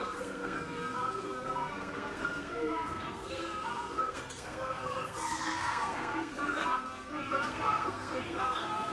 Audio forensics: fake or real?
fake